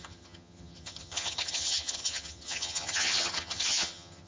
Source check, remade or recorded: remade